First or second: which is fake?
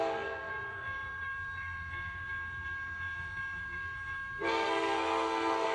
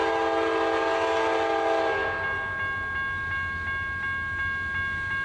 first